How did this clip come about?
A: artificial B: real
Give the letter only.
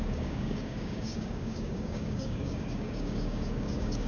A